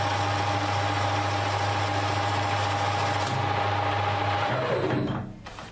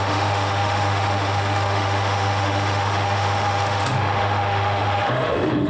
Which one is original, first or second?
first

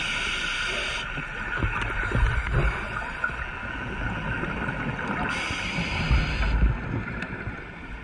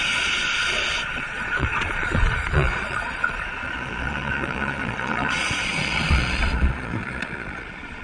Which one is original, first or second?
first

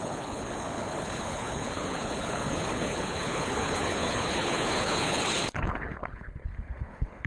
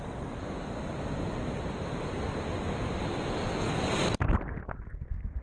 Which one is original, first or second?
second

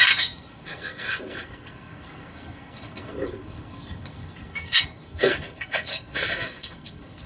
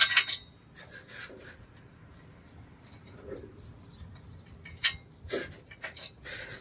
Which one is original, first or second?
second